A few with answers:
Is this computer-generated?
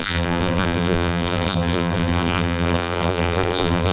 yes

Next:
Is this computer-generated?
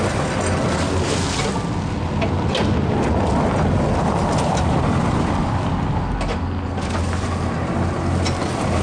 no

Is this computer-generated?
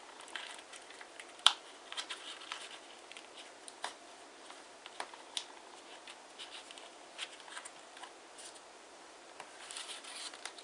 yes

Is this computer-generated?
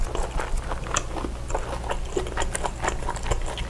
no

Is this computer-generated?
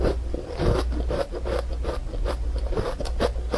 no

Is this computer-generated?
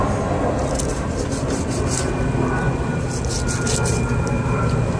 no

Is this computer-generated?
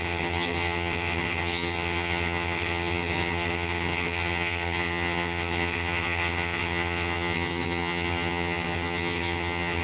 yes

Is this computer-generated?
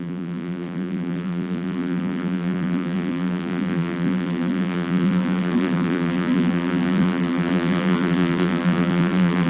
yes